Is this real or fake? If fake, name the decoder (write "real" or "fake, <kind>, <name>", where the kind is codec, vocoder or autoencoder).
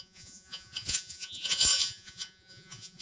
fake, vocoder, Vocos